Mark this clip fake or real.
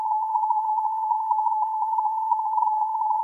fake